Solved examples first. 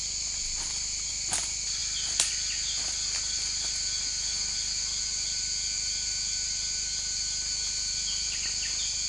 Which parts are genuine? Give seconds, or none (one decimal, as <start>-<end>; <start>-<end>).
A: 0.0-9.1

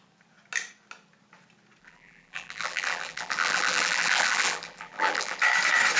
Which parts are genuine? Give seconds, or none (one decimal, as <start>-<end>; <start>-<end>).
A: 0.0-1.8; 5.4-6.0

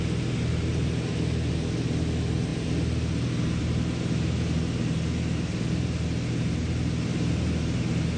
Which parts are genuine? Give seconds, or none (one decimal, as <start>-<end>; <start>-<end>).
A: 0.0-8.2